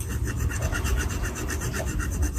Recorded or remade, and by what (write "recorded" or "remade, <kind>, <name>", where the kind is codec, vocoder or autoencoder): recorded